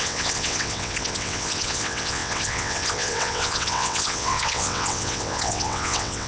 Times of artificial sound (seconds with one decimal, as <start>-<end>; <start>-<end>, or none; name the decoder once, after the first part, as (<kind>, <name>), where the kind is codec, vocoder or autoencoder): 0.0-6.3 (vocoder, WaveNeXt)